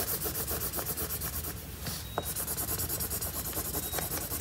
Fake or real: real